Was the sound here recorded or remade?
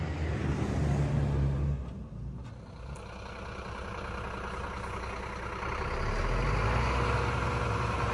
recorded